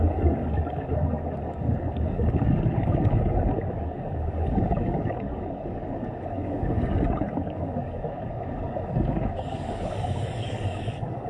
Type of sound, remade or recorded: remade